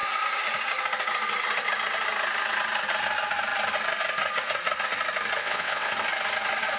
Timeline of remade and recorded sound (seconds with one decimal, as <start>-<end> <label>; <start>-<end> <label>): 0.0-5.4 recorded; 5.4-5.9 remade; 5.9-6.8 recorded

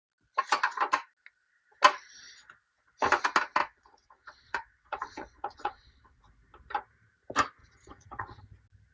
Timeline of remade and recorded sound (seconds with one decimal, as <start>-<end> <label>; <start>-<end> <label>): 0.0-3.6 recorded; 3.6-6.2 remade; 6.2-7.6 recorded; 7.6-8.4 remade; 8.4-8.9 recorded

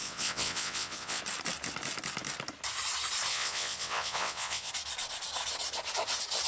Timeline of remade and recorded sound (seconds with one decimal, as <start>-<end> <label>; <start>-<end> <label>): 0.0-1.2 remade; 1.2-3.3 recorded; 3.3-4.7 remade; 4.7-6.5 recorded

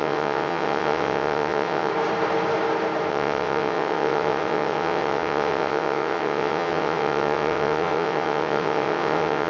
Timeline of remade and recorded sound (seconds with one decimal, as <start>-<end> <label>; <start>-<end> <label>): 0.0-1.9 remade; 1.9-3.1 recorded; 3.1-9.5 remade

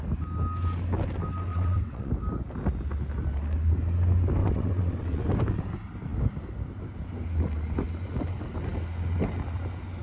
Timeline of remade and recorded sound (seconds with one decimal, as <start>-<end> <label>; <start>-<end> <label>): 0.0-1.5 recorded; 1.5-2.1 remade; 2.1-4.4 recorded; 4.4-5.2 remade; 5.2-10.0 recorded

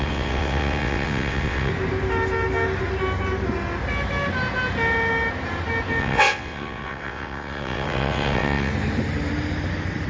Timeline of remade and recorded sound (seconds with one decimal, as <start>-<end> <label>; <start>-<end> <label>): 0.0-1.7 remade; 1.7-6.0 recorded; 6.0-8.7 remade; 8.7-10.1 recorded

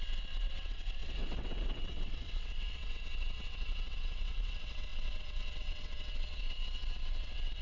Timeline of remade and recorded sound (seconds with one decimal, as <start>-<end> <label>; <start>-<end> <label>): 0.0-7.6 remade